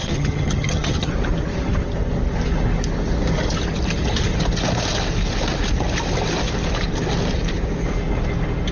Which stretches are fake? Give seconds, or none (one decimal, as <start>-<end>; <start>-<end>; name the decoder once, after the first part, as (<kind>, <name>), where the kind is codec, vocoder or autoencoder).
0.0-1.1 (vocoder, HiFi-GAN)